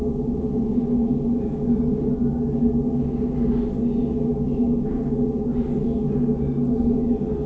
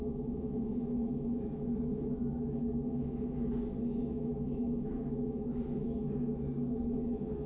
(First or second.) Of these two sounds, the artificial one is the second